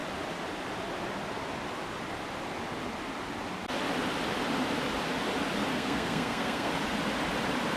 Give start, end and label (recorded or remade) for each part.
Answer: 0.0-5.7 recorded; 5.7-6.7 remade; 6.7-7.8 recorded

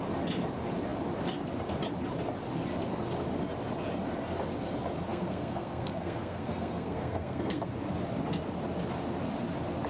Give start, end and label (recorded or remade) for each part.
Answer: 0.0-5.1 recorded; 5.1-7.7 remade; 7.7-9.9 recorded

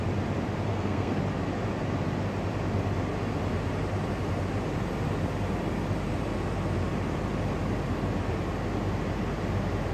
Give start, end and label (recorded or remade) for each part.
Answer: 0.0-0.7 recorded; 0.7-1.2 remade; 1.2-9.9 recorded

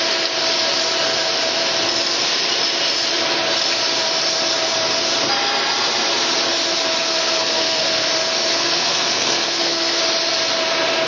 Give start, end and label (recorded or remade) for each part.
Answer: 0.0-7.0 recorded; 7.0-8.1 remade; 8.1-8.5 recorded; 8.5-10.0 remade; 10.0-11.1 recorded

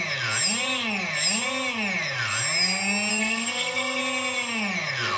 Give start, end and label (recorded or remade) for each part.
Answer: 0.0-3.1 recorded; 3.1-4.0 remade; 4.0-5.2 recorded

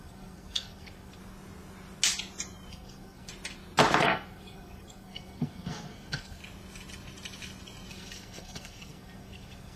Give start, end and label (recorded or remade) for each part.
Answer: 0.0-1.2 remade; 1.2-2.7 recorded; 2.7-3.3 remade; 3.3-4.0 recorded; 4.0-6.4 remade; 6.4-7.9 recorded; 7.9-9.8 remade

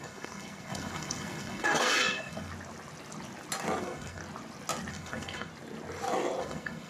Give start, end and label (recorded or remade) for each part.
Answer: 0.0-2.5 remade; 2.5-3.8 recorded; 3.8-4.2 remade; 4.2-4.9 recorded; 4.9-5.5 remade; 5.5-6.4 recorded; 6.4-6.9 remade

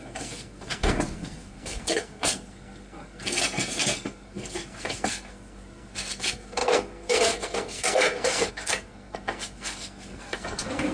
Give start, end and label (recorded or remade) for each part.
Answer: 0.0-10.9 remade